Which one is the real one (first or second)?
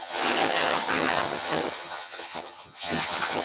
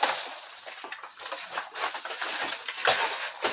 second